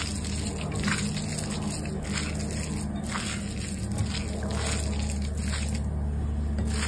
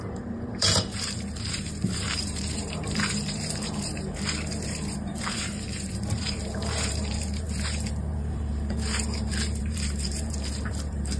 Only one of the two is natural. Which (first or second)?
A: first